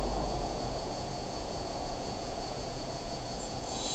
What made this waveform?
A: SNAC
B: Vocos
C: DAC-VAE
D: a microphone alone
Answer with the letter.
B